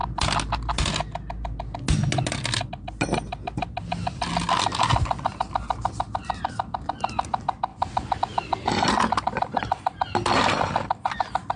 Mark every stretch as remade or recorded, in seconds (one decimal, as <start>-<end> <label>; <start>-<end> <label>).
0.0-11.6 recorded